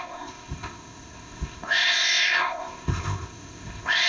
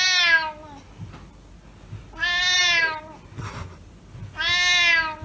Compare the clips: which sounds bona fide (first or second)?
second